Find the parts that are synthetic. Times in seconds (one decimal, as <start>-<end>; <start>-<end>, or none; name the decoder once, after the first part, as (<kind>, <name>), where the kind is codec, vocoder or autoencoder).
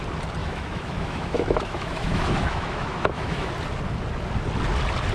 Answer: 0.4-3.5 (autoencoder, DAC-VAE)